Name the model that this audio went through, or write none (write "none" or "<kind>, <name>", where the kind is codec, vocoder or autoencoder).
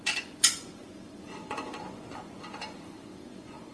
vocoder, Vocos